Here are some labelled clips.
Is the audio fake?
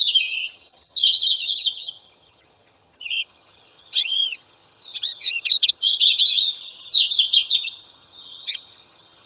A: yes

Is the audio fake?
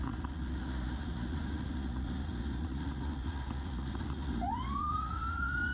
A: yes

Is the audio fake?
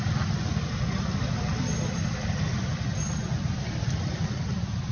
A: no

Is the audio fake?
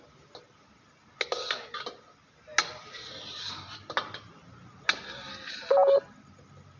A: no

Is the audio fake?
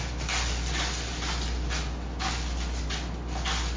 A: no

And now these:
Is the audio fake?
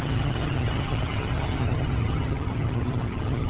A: yes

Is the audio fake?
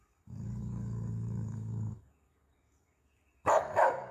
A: yes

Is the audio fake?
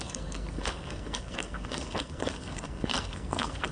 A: yes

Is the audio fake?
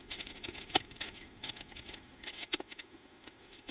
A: yes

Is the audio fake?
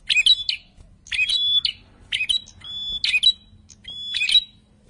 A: no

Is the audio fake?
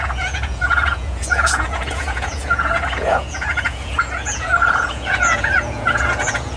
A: yes